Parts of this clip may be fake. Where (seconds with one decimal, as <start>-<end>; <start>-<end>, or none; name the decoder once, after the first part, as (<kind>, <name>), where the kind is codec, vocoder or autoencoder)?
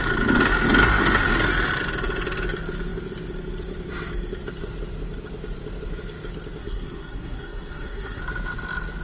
6.6-8.2 (codec, SNAC)